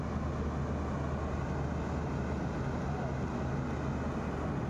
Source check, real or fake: real